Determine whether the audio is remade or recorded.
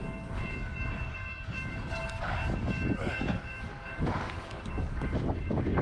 remade